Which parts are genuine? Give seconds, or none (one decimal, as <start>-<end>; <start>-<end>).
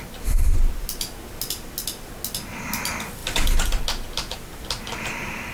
0.0-5.5